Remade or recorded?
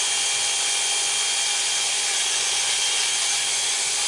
remade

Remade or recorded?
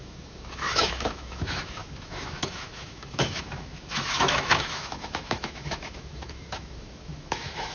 remade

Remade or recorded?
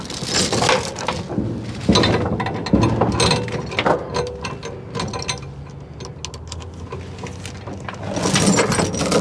recorded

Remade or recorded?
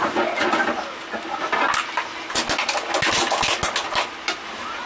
recorded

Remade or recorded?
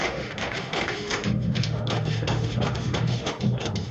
remade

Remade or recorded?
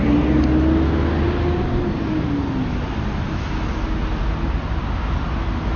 recorded